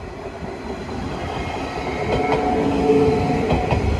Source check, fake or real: real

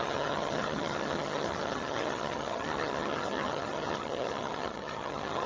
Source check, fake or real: fake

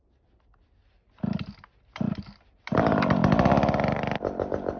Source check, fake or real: real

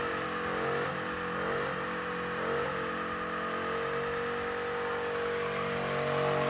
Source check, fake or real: real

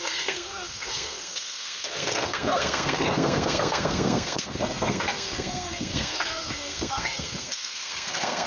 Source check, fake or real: fake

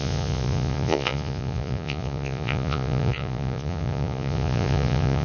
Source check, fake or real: fake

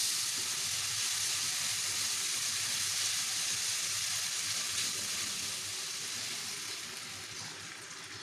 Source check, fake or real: real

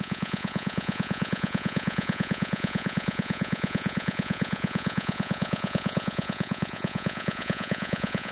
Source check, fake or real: fake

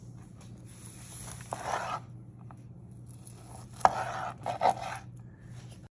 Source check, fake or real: real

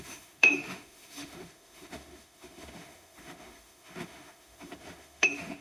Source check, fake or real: fake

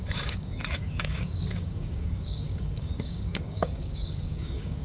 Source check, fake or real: fake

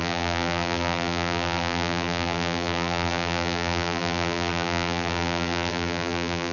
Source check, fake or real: fake